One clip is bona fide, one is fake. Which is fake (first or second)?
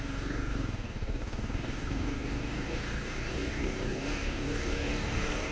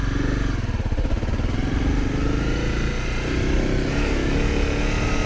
first